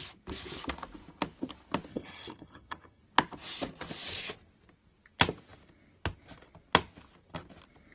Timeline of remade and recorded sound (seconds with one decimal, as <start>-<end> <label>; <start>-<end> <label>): 0.0-1.9 recorded; 1.9-3.0 remade; 3.0-7.9 recorded